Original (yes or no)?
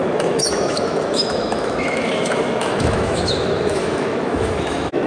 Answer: no